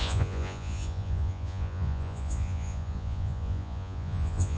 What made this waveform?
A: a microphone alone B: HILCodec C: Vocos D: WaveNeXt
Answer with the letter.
C